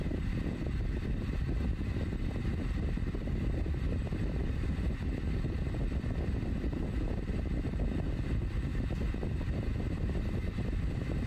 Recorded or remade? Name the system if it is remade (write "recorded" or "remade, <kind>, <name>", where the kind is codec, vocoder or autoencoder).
remade, vocoder, BigVGAN v2